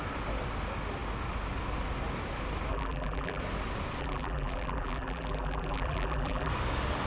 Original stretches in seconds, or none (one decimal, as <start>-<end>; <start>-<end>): 0.0-2.7; 3.4-4.0; 6.5-7.1